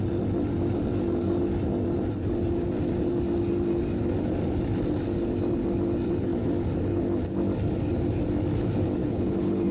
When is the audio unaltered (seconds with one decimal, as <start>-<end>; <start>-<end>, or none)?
0.0-9.0